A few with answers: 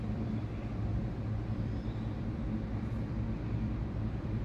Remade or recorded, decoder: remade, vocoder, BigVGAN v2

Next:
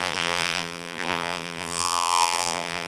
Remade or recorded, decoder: remade, vocoder, BigVGAN v2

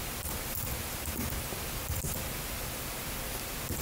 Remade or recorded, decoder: remade, vocoder, BigVGAN v2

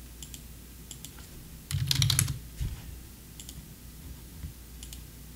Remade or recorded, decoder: recorded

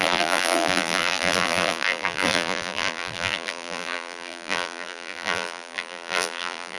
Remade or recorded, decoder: remade, vocoder, BigVGAN v2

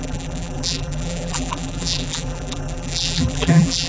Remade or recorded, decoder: remade, vocoder, BigVGAN v2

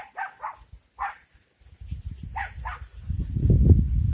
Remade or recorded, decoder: recorded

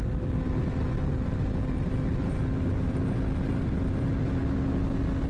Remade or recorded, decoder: recorded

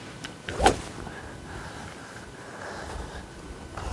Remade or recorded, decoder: recorded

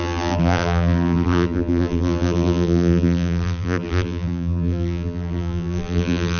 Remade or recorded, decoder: remade, vocoder, BigVGAN v2